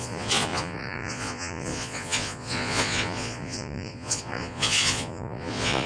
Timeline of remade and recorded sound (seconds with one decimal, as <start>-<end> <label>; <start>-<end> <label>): 0.0-5.9 remade